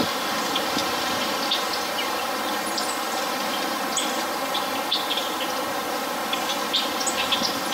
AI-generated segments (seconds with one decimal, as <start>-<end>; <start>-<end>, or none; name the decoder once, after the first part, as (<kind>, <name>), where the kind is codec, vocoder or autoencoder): 0.8-4.6 (vocoder, BigVGAN v2)